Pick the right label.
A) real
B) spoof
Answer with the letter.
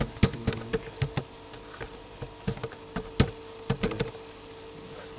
A